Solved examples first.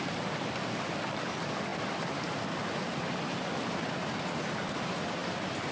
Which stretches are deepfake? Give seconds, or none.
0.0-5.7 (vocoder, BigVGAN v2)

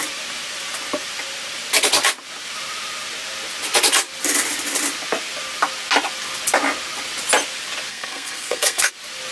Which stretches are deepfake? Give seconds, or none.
7.9-8.9 (codec, SNAC)

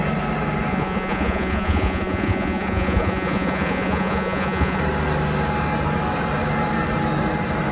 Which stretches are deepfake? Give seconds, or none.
0.7-4.8 (vocoder, Vocos)

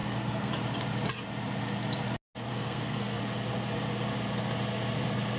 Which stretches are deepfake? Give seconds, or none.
0.0-0.5 (codec, SNAC); 2.5-3.2

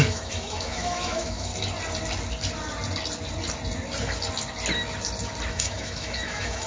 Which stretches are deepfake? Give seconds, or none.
0.0-1.5 (autoencoder, DAC-VAE); 5.5-6.7

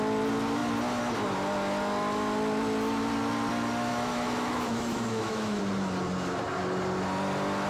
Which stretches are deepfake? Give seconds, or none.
3.9-5.6 (autoencoder, DAC-VAE)

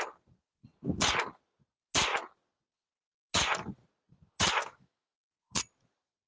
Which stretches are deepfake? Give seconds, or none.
4.6-5.3 (autoencoder, DAC-VAE)